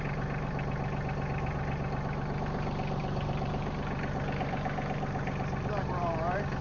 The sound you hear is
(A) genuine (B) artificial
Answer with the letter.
B